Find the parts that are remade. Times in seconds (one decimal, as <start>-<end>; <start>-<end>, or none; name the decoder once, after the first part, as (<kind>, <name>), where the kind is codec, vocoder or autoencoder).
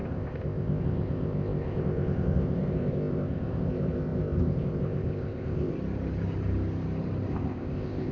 0.0-5.7 (codec, ZipCodec); 7.3-8.1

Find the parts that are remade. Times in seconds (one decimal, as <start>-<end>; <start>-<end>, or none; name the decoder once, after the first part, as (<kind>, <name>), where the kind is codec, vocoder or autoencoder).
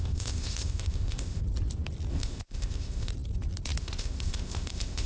0.0-1.4 (codec, ZipCodec); 2.1-3.1; 3.8-5.1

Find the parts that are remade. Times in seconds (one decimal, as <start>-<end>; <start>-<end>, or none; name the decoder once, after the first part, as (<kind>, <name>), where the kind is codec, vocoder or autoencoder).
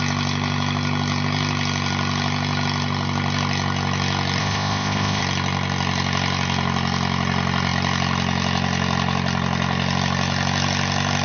4.4-5.2 (codec, ZipCodec)